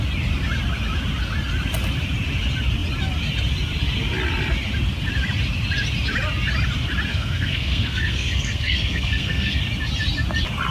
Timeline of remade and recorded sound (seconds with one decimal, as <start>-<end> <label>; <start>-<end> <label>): 0.0-7.1 recorded; 7.1-9.6 remade; 9.6-10.7 recorded